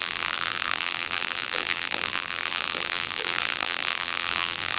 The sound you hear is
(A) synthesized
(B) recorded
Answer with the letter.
A